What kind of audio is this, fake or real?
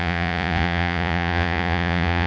fake